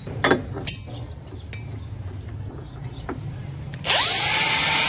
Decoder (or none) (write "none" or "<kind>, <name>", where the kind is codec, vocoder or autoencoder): vocoder, BigVGAN v2